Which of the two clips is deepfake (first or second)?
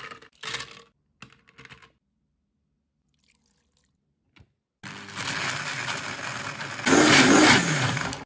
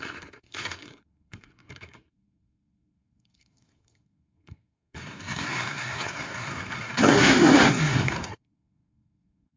second